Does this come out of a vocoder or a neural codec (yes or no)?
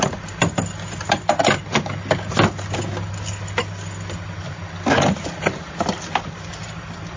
no